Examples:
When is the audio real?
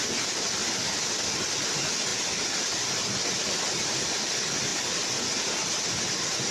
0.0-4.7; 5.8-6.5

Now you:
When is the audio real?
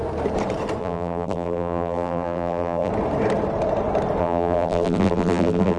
0.0-0.8; 2.9-4.2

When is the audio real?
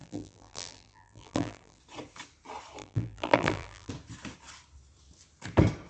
1.8-2.8; 3.9-5.9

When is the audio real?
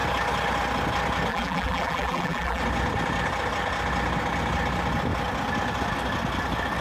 0.0-1.3; 2.6-6.8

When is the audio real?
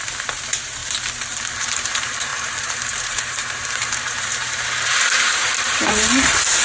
0.8-1.6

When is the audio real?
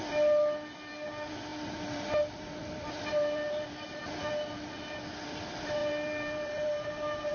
0.0-1.5; 4.0-5.8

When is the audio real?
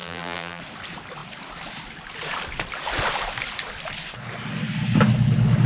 0.6-5.7